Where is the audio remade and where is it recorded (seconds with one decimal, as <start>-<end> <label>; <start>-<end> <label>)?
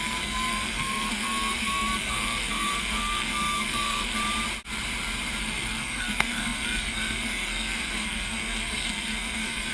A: 0.0-4.2 remade; 4.2-5.4 recorded; 5.4-9.7 remade